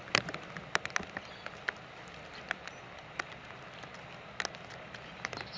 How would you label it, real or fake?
real